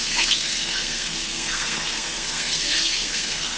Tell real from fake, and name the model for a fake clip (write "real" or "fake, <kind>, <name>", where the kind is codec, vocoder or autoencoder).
fake, codec, SNAC